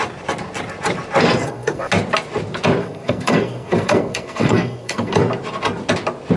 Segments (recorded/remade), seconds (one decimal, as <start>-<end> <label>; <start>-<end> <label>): 0.0-1.4 recorded; 1.4-1.9 remade; 1.9-2.8 recorded; 2.8-5.2 remade; 5.2-6.4 recorded